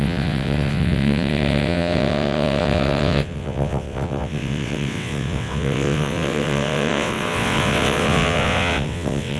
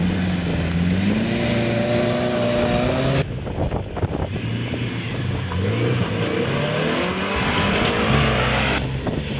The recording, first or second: second